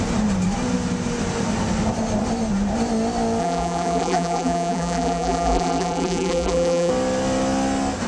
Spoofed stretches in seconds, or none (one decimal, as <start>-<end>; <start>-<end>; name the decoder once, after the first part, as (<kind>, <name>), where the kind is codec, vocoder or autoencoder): 3.4-6.9 (vocoder, BigVGAN v2)